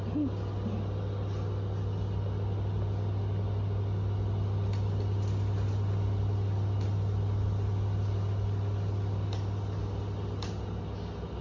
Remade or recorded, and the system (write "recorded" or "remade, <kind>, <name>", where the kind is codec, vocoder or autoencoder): recorded